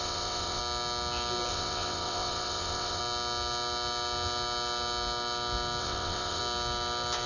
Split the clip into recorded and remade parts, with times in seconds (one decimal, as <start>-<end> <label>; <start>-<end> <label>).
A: 0.0-0.6 remade; 0.6-1.5 recorded; 1.5-3.0 remade; 3.0-5.8 recorded; 5.8-6.4 remade; 6.4-7.3 recorded